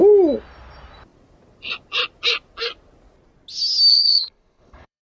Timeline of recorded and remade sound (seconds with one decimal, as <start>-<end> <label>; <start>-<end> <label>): 0.0-3.9 recorded; 3.9-5.0 remade